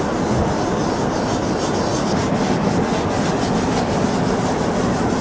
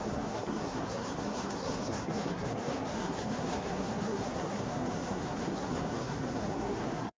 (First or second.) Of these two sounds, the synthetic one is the second